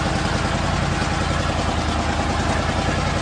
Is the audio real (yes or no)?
yes